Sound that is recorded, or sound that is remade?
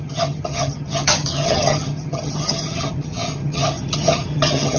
remade